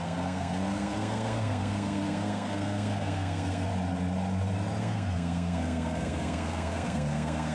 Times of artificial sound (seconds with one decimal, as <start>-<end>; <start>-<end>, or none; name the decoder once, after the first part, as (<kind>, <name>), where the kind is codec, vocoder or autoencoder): 0.0-3.7 (codec, SNAC); 4.8-7.5